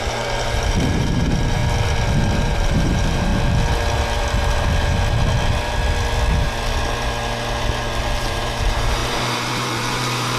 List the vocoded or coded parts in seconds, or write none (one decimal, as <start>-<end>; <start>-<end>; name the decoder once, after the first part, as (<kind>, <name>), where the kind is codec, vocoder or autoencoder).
0.0-1.6 (vocoder, BigVGAN v2); 2.4-3.3; 8.0-10.4